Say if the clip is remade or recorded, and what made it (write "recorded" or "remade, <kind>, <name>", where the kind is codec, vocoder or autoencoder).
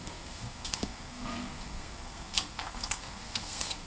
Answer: remade, codec, SNAC